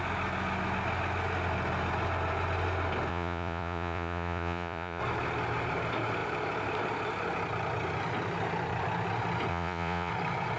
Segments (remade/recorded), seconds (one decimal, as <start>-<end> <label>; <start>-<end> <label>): 0.0-3.1 recorded; 3.1-5.0 remade; 5.0-9.5 recorded; 9.5-10.1 remade; 10.1-10.6 recorded